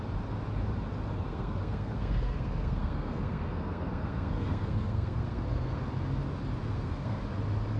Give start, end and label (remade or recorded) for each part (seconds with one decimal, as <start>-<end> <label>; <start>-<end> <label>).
0.0-1.1 recorded; 1.1-5.8 remade; 5.8-6.6 recorded; 6.6-7.2 remade; 7.2-7.8 recorded